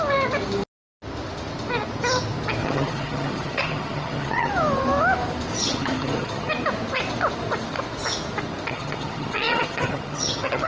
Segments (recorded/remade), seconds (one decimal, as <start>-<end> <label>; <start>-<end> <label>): 0.0-2.6 recorded; 2.6-4.5 remade; 4.5-5.5 recorded; 5.5-6.5 remade; 6.5-8.7 recorded; 8.7-10.7 remade